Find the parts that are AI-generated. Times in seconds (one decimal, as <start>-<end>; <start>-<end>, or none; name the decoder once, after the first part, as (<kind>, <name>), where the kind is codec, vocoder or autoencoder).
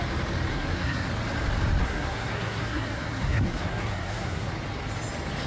0.5-1.1 (codec, SNAC); 1.8-4.5